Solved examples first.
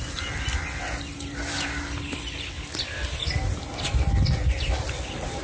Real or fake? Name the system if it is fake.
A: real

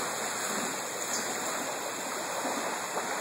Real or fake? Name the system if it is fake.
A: real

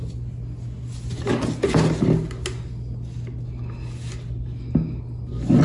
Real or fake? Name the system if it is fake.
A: real